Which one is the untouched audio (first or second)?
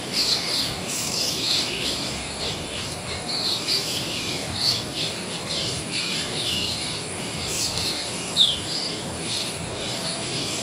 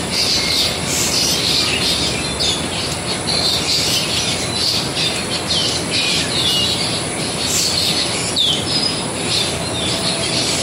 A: second